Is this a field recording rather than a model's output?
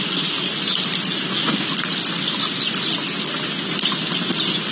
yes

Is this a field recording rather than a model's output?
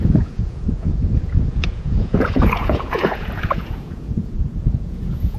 no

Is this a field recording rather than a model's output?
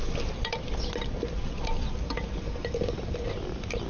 yes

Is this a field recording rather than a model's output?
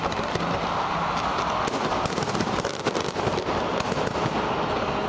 yes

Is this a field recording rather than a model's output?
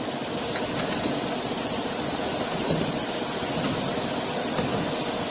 yes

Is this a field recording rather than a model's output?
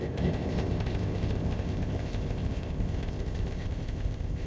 no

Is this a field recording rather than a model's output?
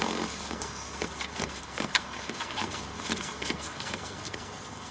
no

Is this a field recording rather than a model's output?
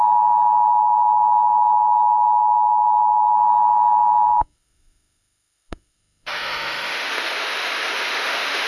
no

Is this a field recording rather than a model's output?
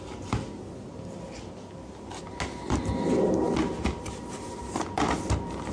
yes